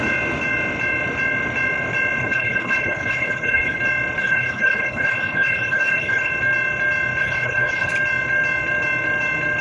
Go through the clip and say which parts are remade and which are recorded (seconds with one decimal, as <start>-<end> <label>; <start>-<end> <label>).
0.0-2.2 recorded; 2.2-3.8 remade; 3.8-4.2 recorded; 4.2-6.3 remade; 6.3-7.2 recorded; 7.2-7.9 remade; 7.9-9.6 recorded